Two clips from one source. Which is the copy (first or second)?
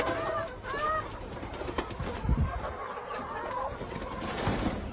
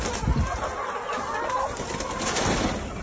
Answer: first